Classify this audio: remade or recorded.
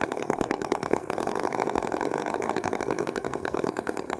remade